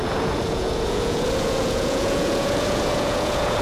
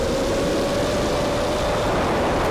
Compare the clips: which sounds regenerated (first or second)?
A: first